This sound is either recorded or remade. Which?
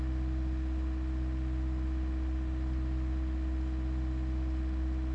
recorded